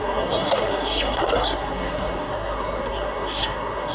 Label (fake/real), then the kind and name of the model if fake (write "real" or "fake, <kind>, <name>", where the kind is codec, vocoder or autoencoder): fake, codec, SNAC